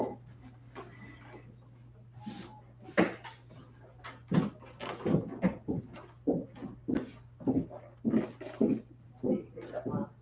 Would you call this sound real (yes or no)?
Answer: yes